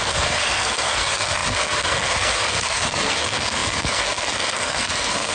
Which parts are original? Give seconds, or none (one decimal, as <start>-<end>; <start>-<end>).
none